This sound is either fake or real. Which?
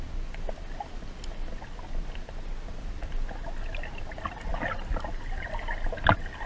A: real